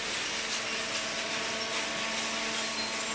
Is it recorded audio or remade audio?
recorded